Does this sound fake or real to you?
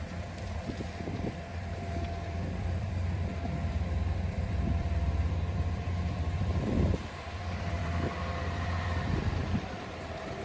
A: fake